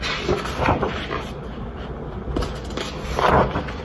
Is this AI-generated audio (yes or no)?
no